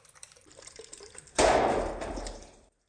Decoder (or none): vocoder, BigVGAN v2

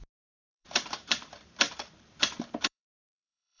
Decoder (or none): vocoder, BigVGAN v2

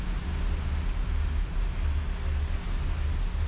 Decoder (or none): none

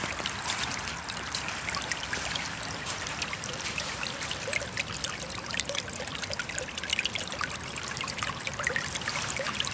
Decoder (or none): vocoder, BigVGAN v2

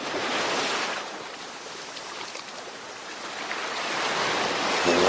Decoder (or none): vocoder, BigVGAN v2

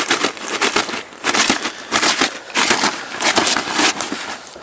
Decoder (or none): none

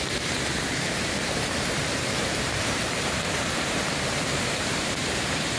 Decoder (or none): vocoder, BigVGAN v2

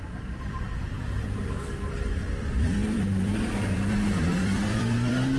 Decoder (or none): vocoder, BigVGAN v2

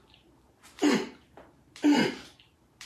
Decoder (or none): vocoder, BigVGAN v2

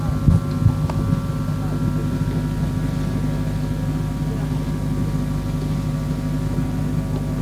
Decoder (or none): none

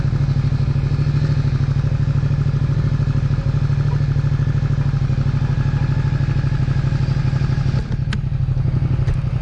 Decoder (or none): none